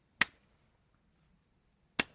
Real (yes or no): yes